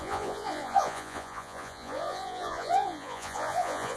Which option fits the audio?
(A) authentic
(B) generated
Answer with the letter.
B